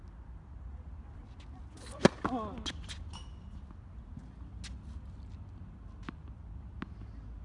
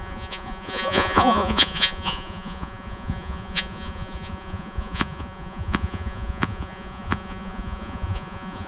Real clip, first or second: first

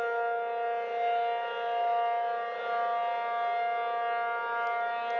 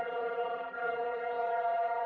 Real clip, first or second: first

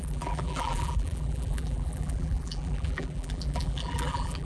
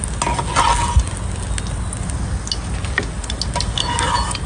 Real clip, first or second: second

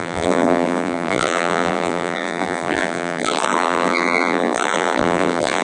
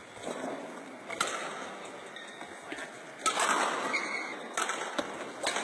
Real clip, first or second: second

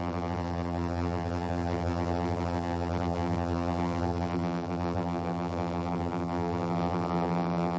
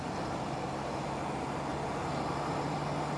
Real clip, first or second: second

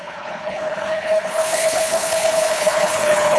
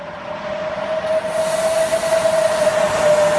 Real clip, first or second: second